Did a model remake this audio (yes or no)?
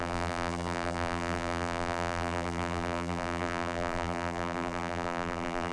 yes